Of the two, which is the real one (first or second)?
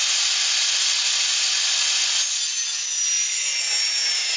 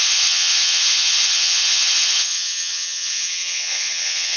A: first